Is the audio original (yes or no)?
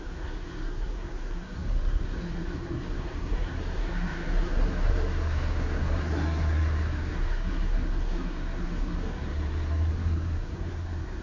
no